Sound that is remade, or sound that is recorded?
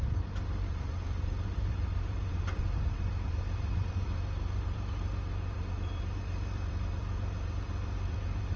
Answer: remade